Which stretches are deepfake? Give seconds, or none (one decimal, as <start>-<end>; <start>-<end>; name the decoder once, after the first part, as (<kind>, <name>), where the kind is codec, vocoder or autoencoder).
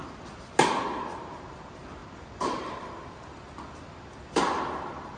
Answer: 0.7-5.2 (vocoder, BigVGAN v2)